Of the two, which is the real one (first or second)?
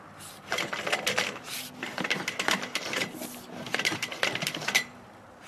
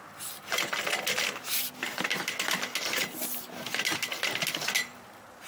second